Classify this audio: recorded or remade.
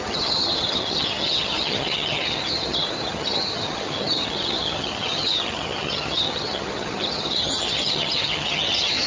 remade